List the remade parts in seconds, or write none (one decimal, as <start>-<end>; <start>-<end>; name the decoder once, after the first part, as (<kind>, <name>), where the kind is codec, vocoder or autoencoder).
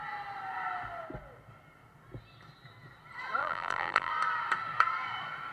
3.4-4.1 (vocoder, BigVGAN v2)